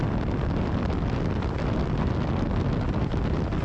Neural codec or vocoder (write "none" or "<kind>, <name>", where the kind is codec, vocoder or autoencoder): none